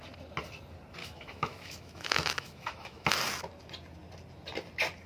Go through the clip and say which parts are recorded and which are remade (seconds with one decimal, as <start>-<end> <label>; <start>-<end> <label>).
0.0-1.0 recorded; 1.0-3.1 remade; 3.1-5.1 recorded

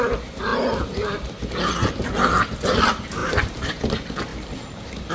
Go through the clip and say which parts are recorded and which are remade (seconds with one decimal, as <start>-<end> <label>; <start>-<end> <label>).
0.0-3.2 recorded; 3.2-3.7 remade; 3.7-4.3 recorded; 4.3-5.1 remade

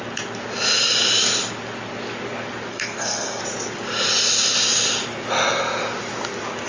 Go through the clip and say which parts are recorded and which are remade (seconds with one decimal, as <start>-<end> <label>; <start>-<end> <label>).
0.0-2.7 recorded; 2.7-3.4 remade; 3.4-6.7 recorded

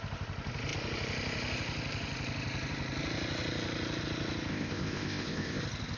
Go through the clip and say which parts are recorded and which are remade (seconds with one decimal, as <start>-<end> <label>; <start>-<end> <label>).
0.0-4.5 recorded; 4.5-5.6 remade; 5.6-6.0 recorded

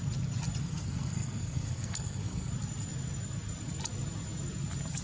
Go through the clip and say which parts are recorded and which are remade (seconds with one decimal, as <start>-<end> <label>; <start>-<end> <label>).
0.0-0.6 recorded; 0.6-2.5 remade; 2.5-5.0 recorded

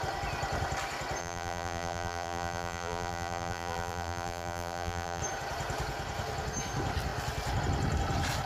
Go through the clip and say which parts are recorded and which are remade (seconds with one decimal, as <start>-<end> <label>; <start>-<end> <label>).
0.0-1.2 recorded; 1.2-5.2 remade; 5.2-8.5 recorded